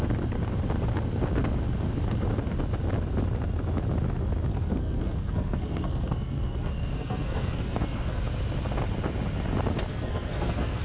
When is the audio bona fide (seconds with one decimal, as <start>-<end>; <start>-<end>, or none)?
0.0-4.5; 8.2-9.9